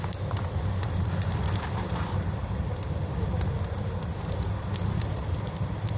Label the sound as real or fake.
real